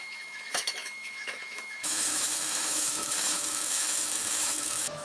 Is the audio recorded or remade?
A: remade